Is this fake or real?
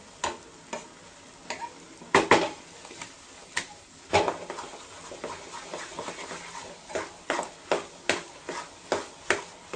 real